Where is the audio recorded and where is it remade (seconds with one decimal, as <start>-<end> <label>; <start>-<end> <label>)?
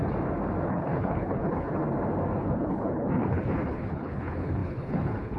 0.0-0.7 recorded; 0.7-1.8 remade; 1.8-2.4 recorded; 2.4-5.4 remade